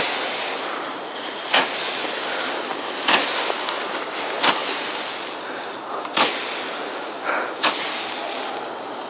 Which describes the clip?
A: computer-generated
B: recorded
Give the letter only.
B